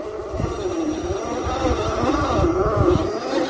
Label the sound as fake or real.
real